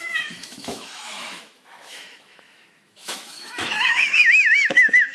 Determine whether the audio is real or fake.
fake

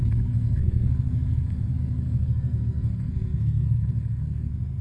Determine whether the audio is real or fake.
fake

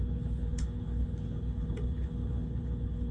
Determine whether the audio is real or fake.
fake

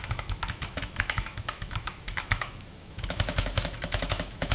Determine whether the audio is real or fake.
fake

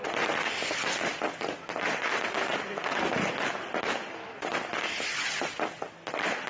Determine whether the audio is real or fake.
real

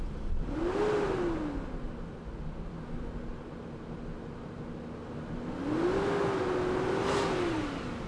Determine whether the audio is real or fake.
real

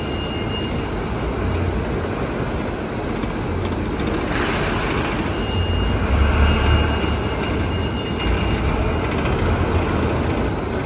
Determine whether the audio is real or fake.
real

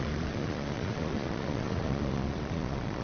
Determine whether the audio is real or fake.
fake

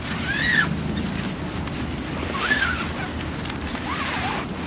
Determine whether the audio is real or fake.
real